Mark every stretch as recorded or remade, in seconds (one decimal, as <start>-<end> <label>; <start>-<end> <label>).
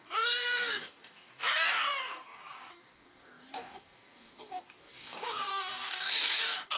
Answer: 0.0-6.8 remade